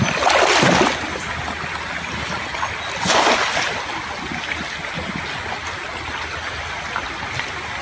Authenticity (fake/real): real